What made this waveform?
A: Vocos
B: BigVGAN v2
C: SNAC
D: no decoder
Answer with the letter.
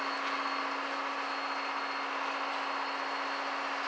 D